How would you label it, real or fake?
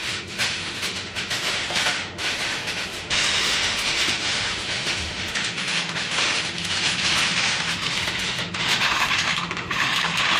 fake